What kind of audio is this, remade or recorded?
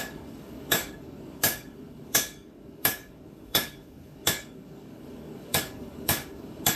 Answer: remade